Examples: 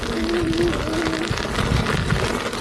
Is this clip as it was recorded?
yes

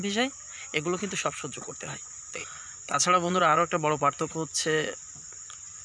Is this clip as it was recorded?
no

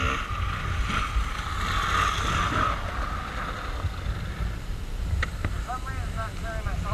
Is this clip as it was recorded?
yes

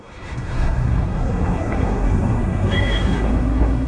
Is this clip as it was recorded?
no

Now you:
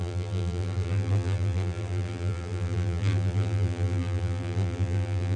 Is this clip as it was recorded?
no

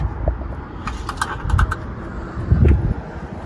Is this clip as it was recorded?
yes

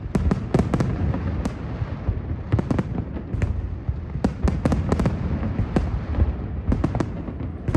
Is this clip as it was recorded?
yes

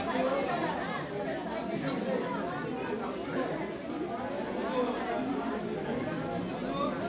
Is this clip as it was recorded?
yes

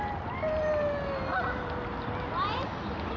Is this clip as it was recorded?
yes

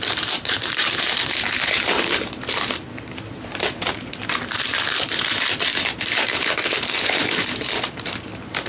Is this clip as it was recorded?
no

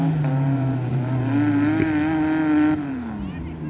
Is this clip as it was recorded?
yes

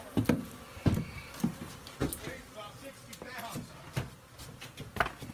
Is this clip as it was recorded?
yes